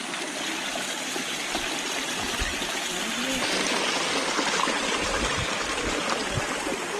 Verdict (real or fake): real